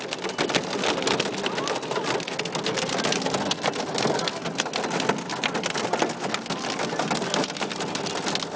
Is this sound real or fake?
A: real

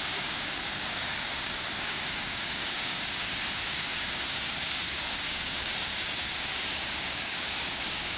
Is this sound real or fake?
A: fake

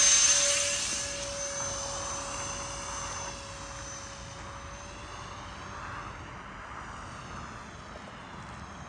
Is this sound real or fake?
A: real